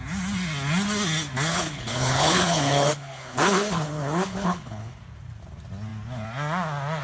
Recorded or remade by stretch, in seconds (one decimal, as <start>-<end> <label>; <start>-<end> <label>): 0.0-1.5 recorded; 1.5-5.0 remade; 5.0-7.0 recorded